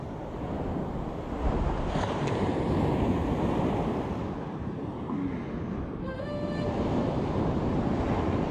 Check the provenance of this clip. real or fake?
real